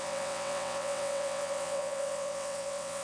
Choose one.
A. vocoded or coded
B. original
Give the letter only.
A